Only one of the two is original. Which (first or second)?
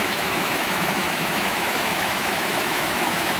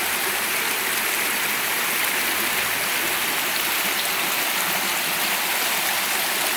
second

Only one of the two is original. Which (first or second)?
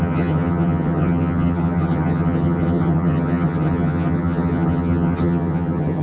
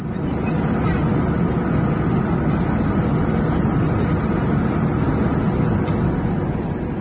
second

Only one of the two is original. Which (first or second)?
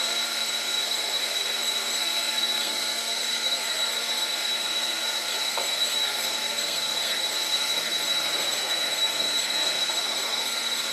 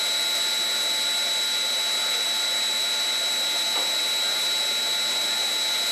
second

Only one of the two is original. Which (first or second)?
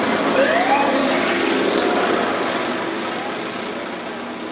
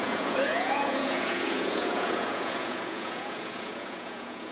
first